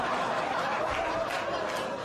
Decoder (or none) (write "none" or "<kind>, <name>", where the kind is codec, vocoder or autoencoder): none